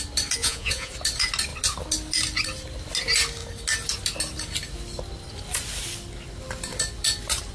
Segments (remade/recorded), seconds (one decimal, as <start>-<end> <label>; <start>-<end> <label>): 0.0-0.4 recorded; 0.4-0.9 remade; 0.9-7.5 recorded